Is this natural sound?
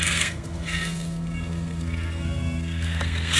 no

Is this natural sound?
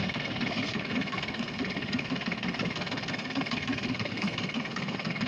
no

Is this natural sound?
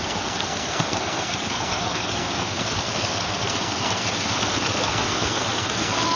no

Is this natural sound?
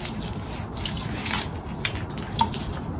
yes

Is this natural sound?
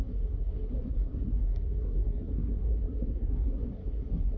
no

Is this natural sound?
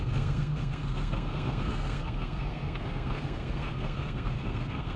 no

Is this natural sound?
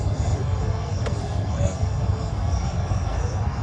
no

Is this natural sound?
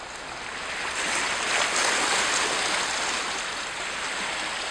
yes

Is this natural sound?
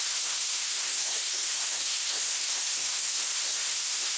no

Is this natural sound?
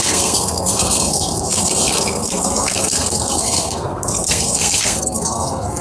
no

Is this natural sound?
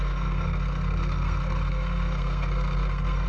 no